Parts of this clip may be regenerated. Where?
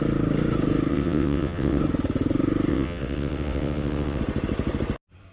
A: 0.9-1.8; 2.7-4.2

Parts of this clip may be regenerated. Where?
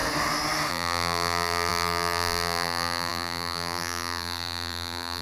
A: 0.7-5.2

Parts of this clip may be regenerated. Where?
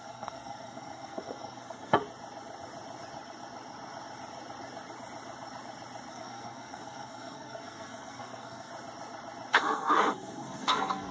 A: 0.0-2.0; 6.1-8.7; 9.5-11.1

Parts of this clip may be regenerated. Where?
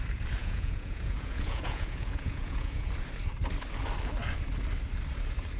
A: 0.4-2.9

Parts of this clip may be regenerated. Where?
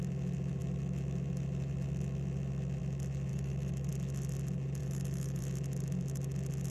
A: 3.3-3.9; 4.8-5.4